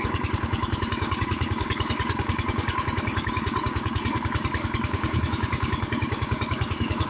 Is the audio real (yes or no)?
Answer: no